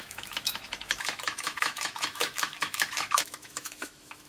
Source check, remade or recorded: remade